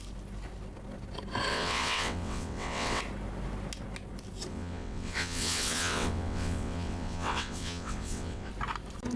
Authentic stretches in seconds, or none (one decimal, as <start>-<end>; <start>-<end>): 0.0-1.5; 3.0-4.5; 8.5-9.2